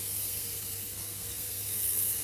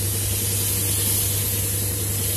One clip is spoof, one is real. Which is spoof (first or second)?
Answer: first